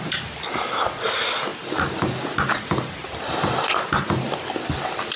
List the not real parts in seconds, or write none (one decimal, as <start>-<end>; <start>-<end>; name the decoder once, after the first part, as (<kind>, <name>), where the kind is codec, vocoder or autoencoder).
none